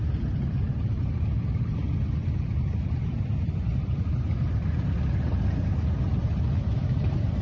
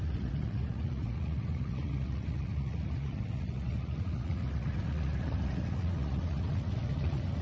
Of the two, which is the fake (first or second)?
second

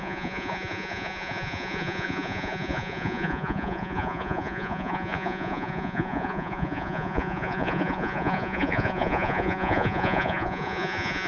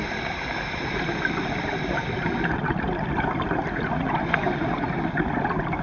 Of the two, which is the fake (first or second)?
first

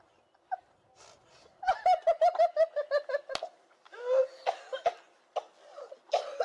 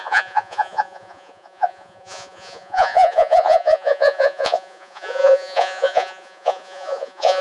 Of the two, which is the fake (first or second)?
second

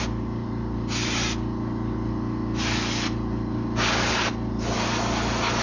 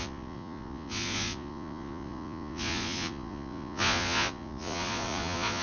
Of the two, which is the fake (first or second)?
second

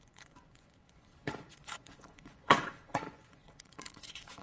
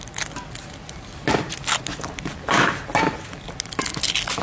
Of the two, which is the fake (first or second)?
first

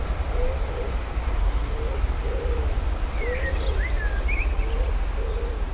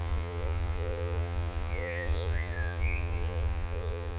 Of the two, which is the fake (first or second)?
second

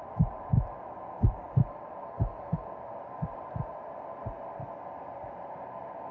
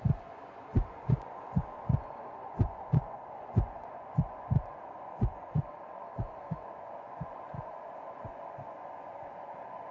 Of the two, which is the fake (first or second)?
second